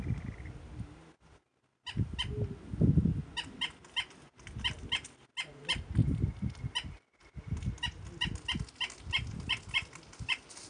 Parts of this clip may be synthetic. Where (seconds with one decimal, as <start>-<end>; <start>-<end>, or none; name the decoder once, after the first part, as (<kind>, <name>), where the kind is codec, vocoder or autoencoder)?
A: none